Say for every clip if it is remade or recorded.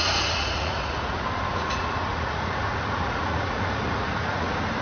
remade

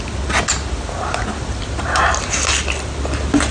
recorded